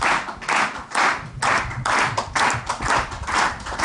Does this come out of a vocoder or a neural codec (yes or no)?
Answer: no